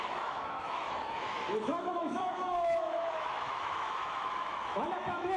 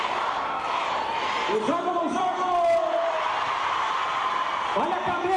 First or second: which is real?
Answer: second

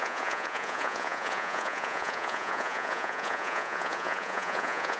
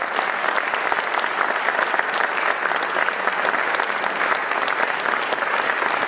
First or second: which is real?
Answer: second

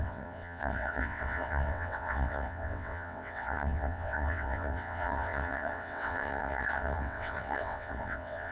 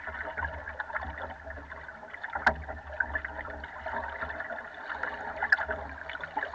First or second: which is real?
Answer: second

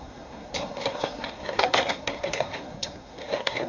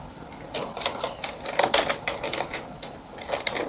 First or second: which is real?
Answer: second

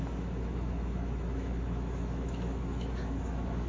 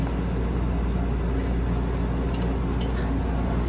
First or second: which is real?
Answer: second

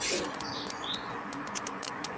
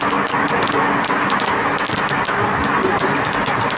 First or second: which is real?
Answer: second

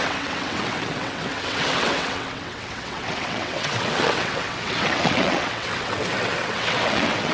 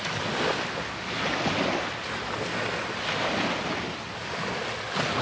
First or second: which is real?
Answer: second